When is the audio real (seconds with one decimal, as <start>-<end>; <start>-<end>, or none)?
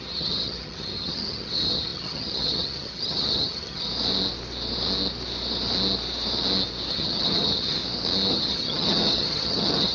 3.9-6.9; 7.8-8.3